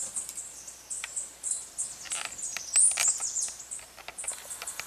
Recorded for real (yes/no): yes